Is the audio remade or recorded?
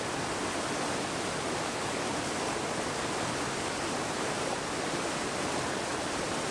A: recorded